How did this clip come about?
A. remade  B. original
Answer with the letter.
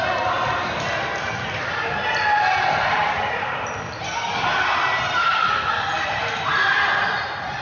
B